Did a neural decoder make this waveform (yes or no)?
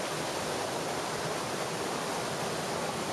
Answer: no